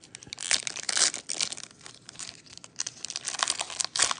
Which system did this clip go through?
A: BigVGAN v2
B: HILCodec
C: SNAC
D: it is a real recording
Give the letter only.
D